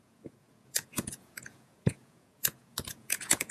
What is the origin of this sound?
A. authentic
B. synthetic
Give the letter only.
B